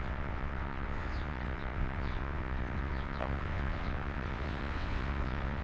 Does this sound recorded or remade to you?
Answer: remade